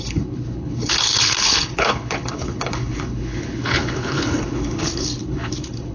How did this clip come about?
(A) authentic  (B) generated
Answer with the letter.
B